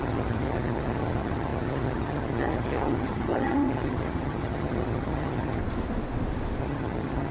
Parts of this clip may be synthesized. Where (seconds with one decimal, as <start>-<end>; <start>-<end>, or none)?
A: 0.0-5.6; 6.6-7.3